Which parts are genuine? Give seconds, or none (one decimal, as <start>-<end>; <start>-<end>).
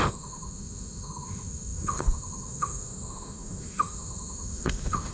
none